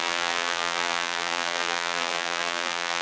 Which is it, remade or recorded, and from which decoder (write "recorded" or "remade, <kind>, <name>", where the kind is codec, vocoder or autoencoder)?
remade, vocoder, BigVGAN v2